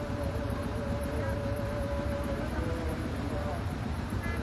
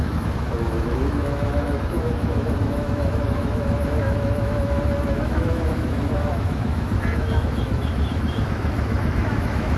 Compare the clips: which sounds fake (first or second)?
second